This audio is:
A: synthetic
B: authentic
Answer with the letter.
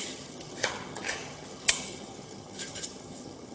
A